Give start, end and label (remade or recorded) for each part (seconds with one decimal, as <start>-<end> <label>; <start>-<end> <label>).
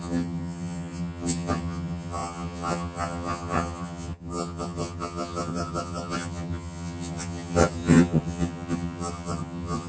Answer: 0.0-9.9 remade